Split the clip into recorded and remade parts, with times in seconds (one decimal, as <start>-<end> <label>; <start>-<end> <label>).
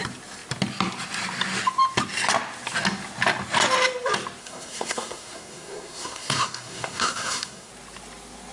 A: 0.0-4.4 recorded; 4.4-7.7 remade; 7.7-8.5 recorded